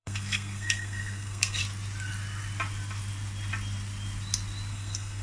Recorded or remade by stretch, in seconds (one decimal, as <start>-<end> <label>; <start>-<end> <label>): 0.0-1.6 remade; 1.6-4.7 recorded; 4.7-5.2 remade